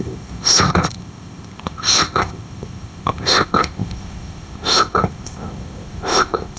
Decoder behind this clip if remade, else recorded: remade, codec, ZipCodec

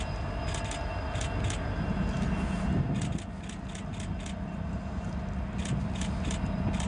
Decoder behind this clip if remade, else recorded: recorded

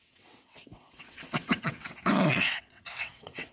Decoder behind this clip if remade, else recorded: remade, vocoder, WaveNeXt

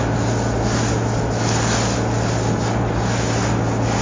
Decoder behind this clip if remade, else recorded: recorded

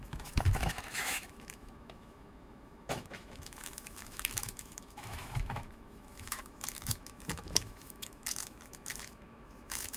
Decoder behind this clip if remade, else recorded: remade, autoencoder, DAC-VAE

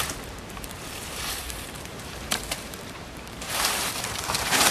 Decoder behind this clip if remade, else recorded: remade, vocoder, BigVGAN v2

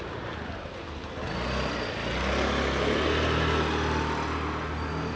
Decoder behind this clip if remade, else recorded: recorded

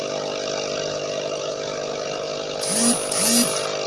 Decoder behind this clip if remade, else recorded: recorded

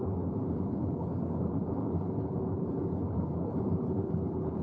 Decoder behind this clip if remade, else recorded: remade, codec, HILCodec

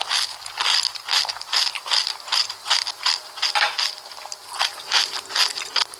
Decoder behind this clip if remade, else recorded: recorded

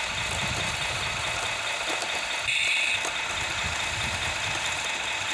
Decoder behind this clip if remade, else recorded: recorded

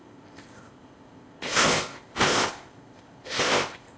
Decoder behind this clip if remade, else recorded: remade, codec, ZipCodec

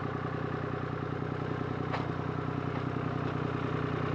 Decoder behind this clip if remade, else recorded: recorded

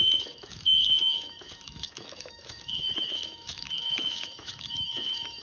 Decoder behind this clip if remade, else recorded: remade, autoencoder, DAC-VAE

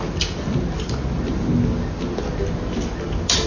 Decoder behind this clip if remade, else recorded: recorded